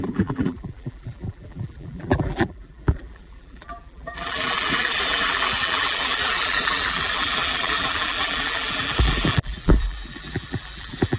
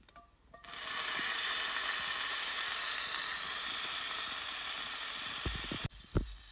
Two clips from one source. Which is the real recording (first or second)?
second